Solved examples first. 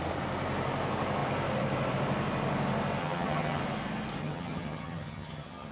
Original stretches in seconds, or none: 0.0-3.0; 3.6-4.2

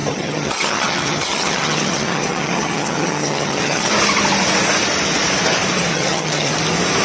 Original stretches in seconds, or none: 3.9-5.9; 6.5-7.0

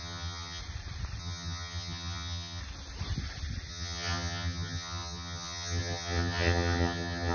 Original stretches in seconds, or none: 0.6-1.2; 2.6-3.7

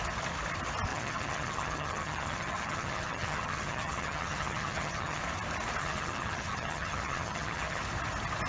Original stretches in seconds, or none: 0.0-0.9; 5.2-5.8; 7.8-8.5

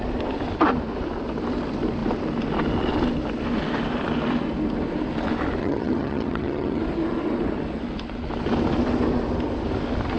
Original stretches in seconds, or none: 0.0-5.6; 6.8-10.2

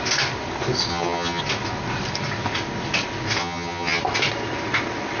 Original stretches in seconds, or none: 0.0-0.9; 1.4-3.4; 4.0-5.2

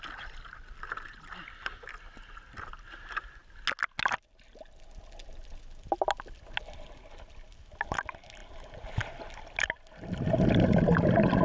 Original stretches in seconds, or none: 0.0-11.4

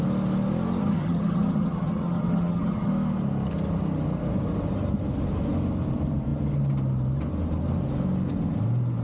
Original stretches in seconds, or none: 0.0-0.8; 2.9-9.0